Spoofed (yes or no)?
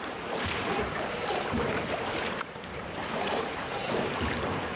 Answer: yes